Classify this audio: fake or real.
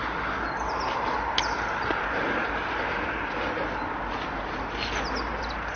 real